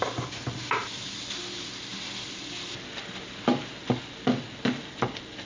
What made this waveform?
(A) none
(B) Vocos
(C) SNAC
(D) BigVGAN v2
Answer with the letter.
A